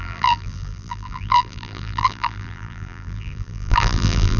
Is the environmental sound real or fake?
fake